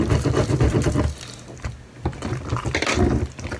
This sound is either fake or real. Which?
real